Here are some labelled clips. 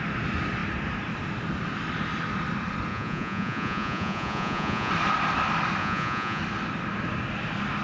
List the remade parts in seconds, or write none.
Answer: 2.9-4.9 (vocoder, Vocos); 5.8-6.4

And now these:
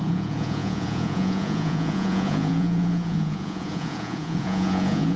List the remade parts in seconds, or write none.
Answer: 0.0-5.2 (vocoder, Vocos)

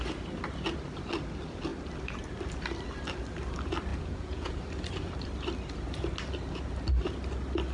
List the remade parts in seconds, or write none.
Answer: 3.9-4.6 (vocoder, Vocos)

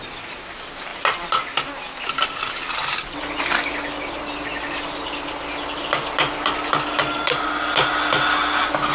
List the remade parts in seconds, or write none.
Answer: none

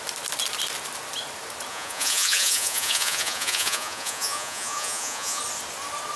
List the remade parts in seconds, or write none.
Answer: 1.7-5.4 (vocoder, Vocos)